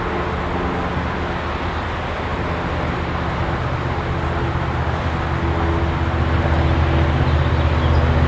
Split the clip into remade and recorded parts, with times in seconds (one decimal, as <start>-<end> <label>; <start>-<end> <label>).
0.0-8.3 recorded